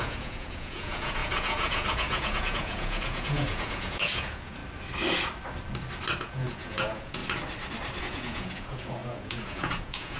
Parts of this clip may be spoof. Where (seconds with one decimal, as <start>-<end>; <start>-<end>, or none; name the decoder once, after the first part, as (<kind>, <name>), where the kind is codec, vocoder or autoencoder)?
0.0-4.6 (vocoder, Vocos); 6.2-7.2; 8.0-10.2